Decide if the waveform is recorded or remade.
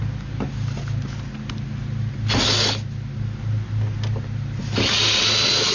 recorded